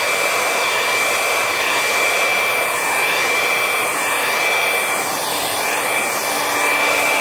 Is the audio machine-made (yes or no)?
no